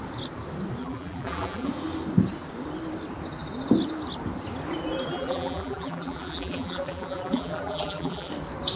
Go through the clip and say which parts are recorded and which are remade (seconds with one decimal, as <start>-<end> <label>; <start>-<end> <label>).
0.0-0.8 recorded; 0.8-1.7 remade; 1.7-5.1 recorded; 5.1-8.3 remade; 8.3-8.8 recorded